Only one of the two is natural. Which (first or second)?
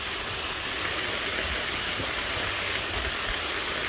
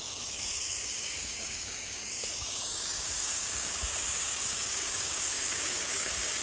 first